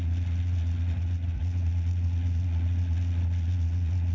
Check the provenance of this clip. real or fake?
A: fake